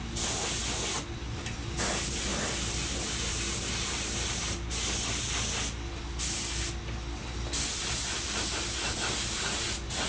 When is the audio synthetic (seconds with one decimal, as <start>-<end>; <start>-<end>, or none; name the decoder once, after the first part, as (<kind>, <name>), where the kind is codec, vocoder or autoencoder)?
none